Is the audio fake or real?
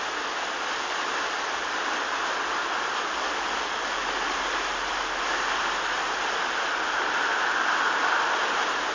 fake